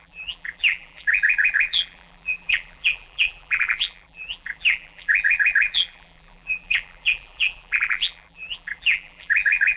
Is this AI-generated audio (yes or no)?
yes